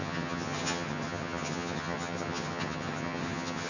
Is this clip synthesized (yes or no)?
yes